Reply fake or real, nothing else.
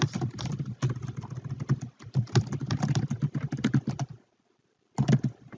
real